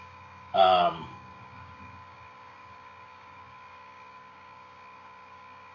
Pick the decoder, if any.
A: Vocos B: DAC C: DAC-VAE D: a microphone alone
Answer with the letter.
B